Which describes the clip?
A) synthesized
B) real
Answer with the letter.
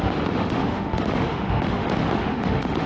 A